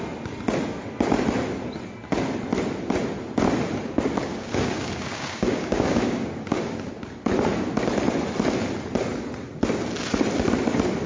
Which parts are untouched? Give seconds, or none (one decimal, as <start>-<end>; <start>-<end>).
0.0-4.3; 6.9-11.1

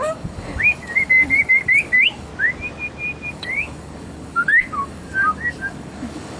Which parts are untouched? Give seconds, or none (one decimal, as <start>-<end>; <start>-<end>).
2.3-3.3

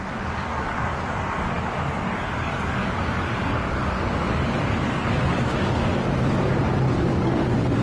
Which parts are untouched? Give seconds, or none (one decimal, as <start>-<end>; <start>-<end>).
5.9-6.9

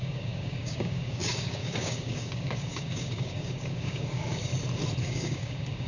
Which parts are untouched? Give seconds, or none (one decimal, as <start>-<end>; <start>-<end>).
4.5-5.0

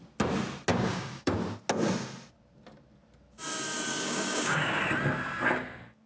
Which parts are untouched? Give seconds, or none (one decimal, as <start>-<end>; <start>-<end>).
0.0-0.7; 1.4-3.9; 4.8-6.1

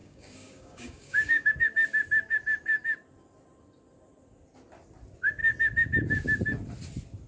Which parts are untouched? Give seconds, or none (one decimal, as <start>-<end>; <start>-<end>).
1.5-7.3

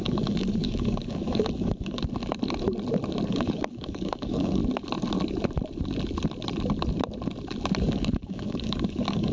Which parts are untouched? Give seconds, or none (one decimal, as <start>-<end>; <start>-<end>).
2.0-3.3; 4.6-7.8

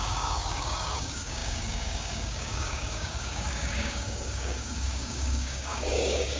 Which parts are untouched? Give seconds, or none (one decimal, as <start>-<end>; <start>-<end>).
none